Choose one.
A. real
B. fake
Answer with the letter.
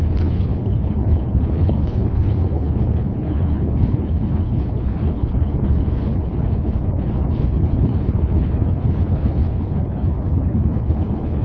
B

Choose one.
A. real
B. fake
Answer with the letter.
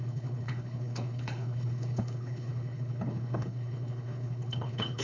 B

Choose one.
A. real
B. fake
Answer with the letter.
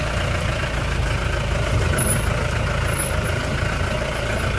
A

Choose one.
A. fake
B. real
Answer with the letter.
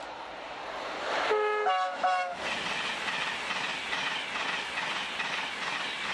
B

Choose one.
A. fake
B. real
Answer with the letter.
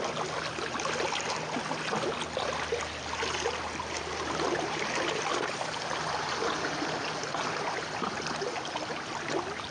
B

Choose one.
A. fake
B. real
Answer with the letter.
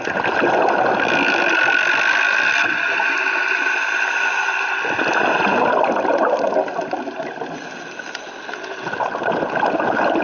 B